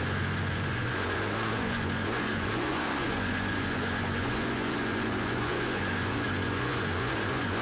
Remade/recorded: remade